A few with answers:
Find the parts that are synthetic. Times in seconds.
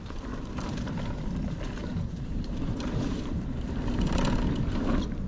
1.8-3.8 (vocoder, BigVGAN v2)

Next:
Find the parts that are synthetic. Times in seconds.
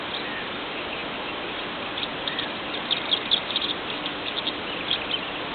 none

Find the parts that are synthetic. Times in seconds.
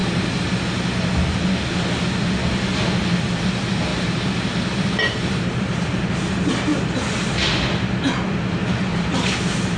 3.9-6.1 (vocoder, BigVGAN v2); 8.9-9.8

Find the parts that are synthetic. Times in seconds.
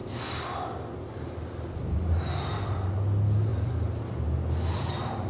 3.5-4.2 (vocoder, BigVGAN v2)